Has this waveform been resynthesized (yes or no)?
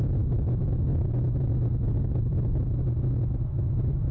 no